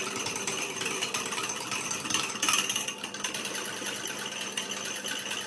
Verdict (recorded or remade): recorded